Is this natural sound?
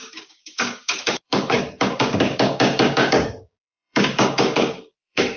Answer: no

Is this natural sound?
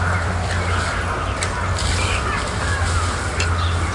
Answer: yes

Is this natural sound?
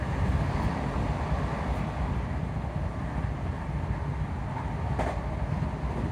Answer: yes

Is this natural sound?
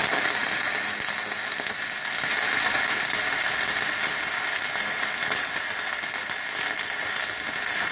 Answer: yes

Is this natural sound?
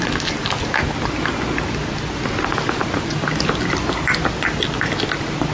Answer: yes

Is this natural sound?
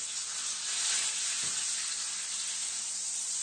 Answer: yes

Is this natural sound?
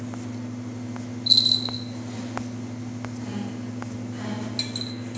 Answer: yes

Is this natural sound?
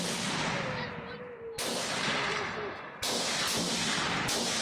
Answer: yes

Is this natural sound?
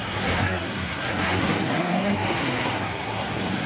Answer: no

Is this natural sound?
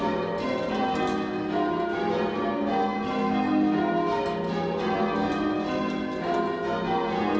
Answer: yes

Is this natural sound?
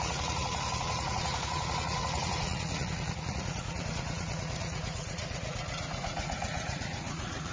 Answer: no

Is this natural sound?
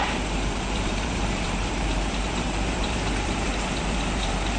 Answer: no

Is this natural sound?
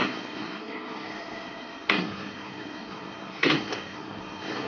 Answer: no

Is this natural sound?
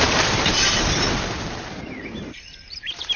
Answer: no